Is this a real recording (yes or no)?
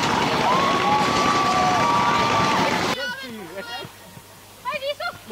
no